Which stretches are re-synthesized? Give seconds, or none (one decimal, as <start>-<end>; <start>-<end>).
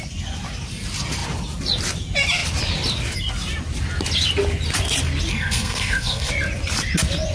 5.3-6.3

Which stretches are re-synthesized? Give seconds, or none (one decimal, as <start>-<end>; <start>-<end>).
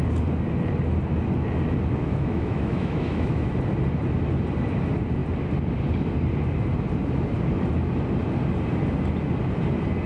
1.9-3.5